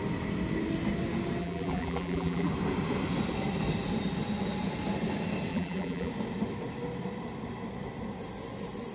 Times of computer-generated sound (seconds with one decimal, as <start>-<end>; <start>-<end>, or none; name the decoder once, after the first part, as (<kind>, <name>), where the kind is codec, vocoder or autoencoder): 1.4-2.5 (vocoder, BigVGAN v2); 5.5-6.1